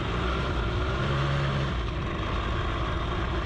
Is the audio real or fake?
real